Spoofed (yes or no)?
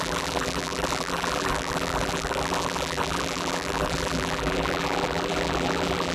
yes